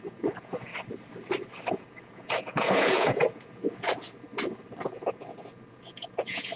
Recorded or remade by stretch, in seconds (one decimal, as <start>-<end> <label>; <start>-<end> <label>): 0.0-0.7 remade; 0.7-1.7 recorded; 1.7-4.3 remade; 4.3-5.1 recorded; 5.1-6.6 remade